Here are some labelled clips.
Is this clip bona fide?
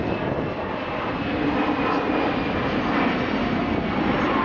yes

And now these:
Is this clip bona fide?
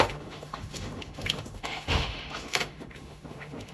no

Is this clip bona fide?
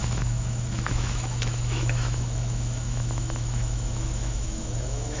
no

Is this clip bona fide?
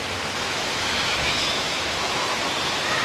no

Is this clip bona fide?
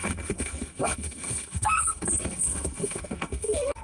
no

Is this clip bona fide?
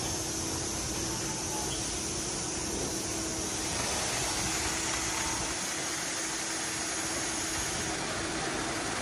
yes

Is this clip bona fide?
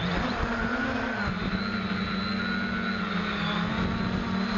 yes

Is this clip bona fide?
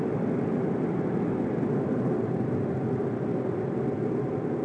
yes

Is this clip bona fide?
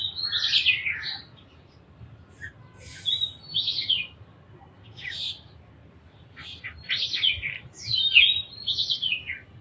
yes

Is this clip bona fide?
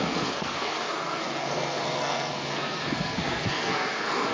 no